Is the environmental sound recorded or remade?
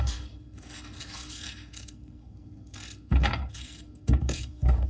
remade